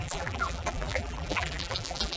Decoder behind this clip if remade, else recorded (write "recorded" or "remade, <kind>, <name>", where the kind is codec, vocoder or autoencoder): remade, vocoder, BigVGAN v2